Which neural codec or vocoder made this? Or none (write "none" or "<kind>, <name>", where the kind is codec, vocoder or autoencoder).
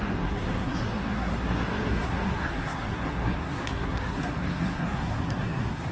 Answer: codec, SNAC